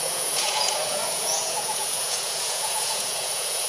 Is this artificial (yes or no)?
yes